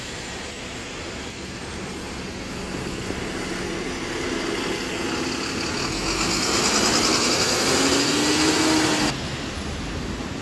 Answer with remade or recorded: recorded